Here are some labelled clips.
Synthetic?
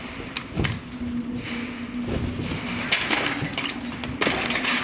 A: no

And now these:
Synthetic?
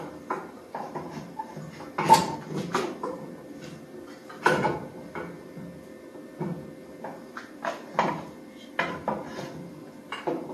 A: no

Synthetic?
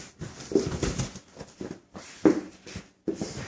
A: no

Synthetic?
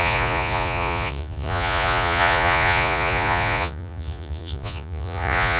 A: yes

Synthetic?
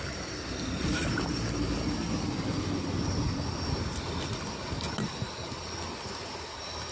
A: no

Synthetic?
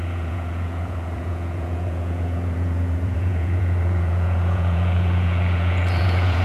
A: yes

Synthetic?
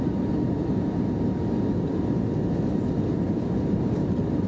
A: no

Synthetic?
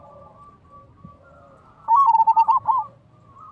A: no